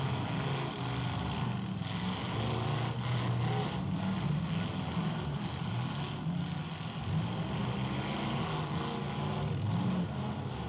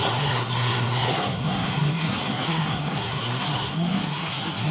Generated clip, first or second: second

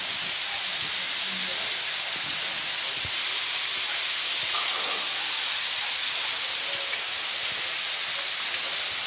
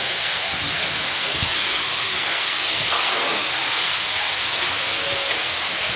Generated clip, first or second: second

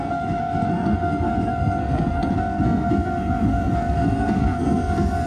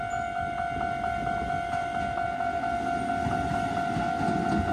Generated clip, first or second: first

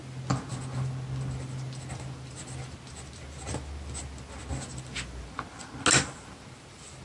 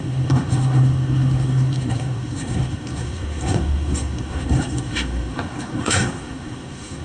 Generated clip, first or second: second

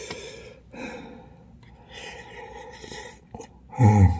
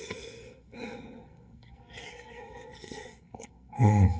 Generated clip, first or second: second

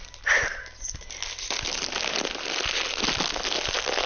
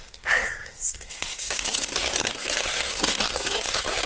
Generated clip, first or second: second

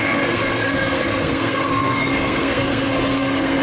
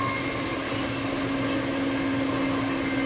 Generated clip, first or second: first